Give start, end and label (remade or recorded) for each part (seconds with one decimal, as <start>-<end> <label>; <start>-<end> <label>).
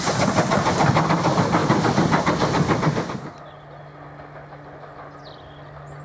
0.0-6.0 recorded